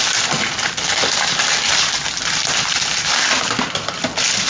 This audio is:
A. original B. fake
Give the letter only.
A